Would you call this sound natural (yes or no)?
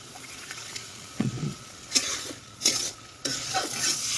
no